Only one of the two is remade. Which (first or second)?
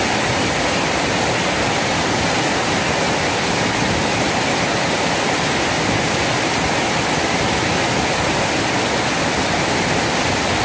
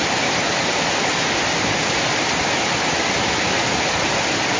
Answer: second